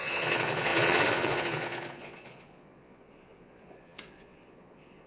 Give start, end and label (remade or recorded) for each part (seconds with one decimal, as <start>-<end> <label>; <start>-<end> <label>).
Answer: 0.0-5.1 remade